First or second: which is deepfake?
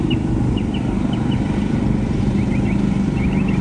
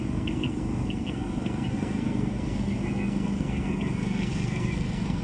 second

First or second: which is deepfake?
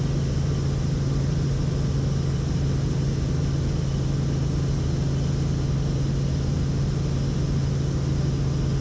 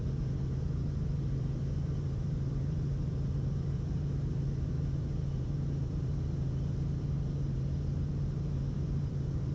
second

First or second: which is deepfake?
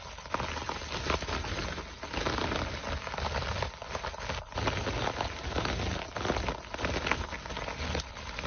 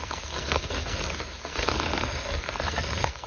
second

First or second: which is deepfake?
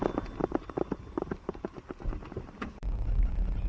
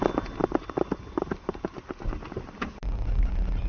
first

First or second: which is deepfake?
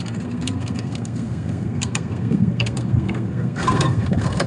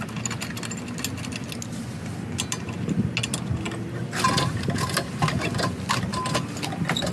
first